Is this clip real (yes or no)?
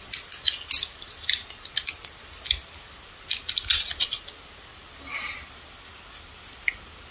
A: yes